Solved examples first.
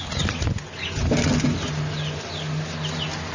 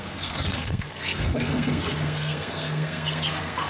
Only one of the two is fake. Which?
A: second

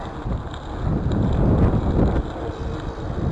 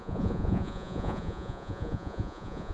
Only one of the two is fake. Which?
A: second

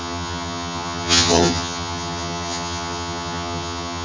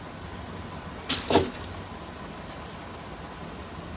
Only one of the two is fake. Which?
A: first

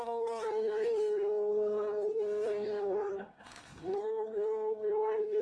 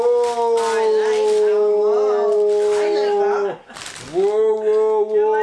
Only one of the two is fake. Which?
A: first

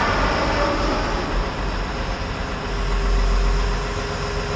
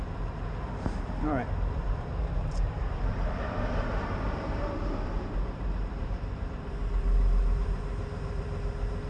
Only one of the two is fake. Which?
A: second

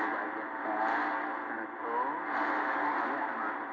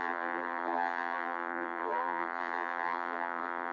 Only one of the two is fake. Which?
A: second